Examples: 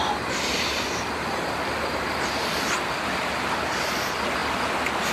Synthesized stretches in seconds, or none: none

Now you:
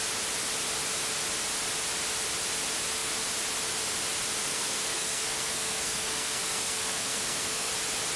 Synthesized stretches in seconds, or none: 4.4-7.7 (codec, SNAC)

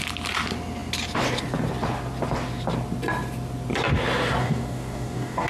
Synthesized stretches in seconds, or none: 4.4-5.5 (codec, DAC)

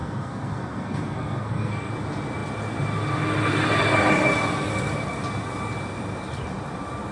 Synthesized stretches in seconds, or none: 0.0-1.9 (codec, SNAC)

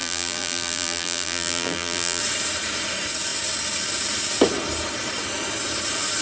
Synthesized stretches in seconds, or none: 0.0-2.2 (vocoder, BigVGAN v2)